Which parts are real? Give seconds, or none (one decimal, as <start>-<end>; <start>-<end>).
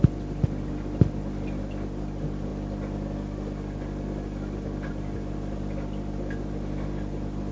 0.0-7.5